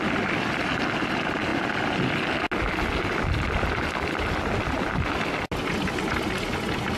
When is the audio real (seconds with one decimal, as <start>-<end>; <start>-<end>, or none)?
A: 0.0-7.0